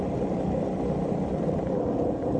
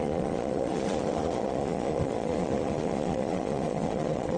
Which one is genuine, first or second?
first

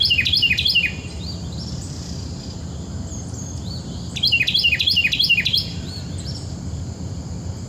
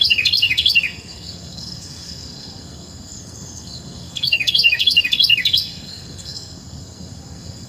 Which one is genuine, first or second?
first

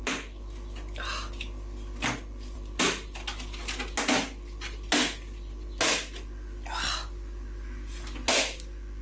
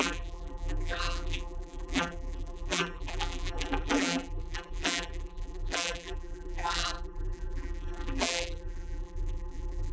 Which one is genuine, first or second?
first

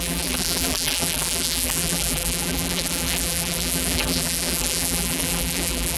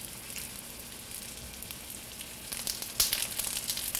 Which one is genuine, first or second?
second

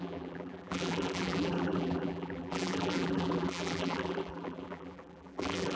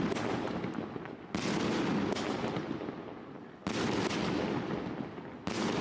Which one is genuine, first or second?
second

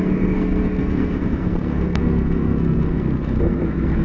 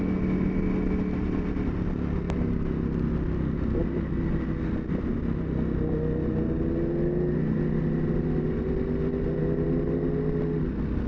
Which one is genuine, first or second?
second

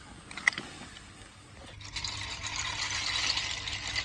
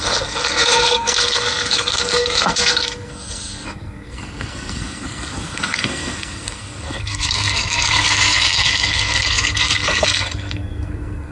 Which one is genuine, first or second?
first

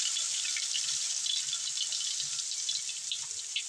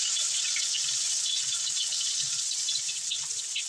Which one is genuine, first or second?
first